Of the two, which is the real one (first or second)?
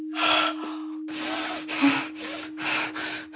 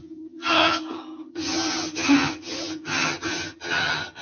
first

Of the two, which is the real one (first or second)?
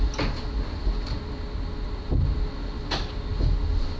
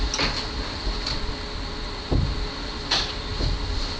first